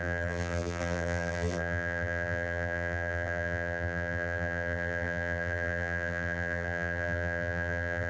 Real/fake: fake